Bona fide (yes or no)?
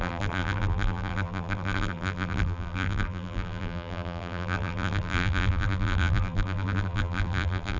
no